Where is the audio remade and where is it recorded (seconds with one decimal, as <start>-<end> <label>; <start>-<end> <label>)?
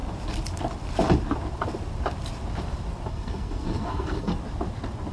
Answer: 0.0-3.1 recorded; 3.1-4.3 remade; 4.3-5.1 recorded